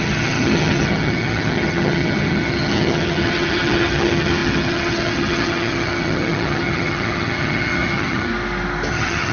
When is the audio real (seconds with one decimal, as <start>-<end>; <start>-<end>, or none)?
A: 8.3-8.9